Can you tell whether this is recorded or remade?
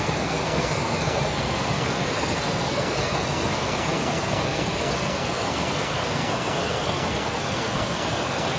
remade